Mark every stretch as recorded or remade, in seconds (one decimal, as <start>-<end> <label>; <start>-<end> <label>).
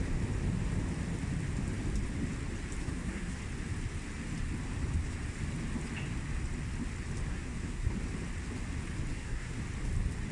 0.0-2.8 recorded; 2.8-3.4 remade; 3.4-7.3 recorded; 7.3-7.9 remade; 7.9-9.1 recorded; 9.1-9.6 remade; 9.6-10.3 recorded